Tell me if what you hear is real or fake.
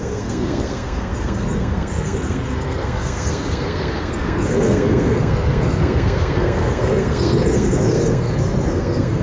fake